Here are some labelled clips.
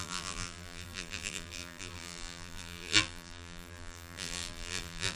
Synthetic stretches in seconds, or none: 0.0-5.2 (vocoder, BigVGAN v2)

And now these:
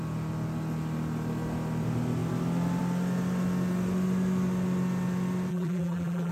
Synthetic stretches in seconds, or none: 5.5-6.3 (vocoder, BigVGAN v2)

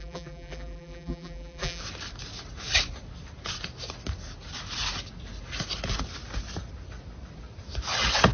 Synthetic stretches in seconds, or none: 0.0-1.8 (vocoder, BigVGAN v2)